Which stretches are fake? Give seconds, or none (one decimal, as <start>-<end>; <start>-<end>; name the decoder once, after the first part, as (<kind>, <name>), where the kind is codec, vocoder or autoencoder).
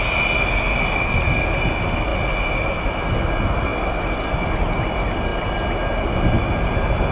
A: none